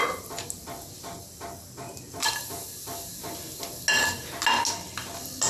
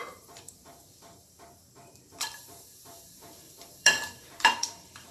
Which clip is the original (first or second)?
first